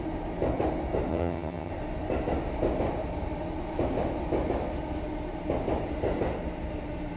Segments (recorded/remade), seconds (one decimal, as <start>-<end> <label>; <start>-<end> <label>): 0.0-1.1 recorded; 1.1-1.7 remade; 1.7-7.2 recorded